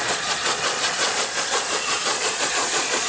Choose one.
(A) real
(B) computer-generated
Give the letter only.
B